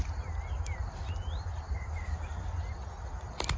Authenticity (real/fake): real